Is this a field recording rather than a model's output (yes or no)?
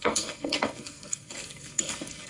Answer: no